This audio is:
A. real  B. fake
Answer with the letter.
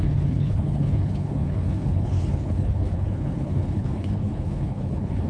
B